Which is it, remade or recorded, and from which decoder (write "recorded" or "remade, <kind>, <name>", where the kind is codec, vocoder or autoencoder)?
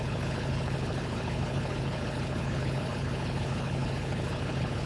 remade, codec, HILCodec